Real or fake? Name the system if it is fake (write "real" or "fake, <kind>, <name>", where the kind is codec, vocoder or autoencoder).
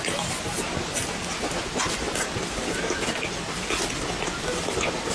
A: real